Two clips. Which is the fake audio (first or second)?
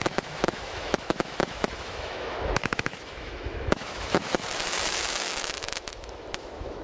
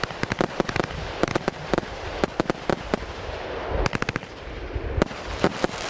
first